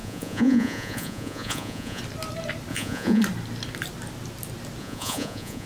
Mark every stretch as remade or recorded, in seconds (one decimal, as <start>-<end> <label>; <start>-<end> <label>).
0.0-2.0 remade; 2.0-2.7 recorded; 2.7-3.2 remade; 3.2-4.8 recorded; 4.8-5.7 remade